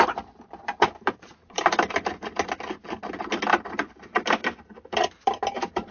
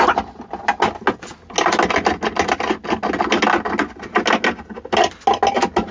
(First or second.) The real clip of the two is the second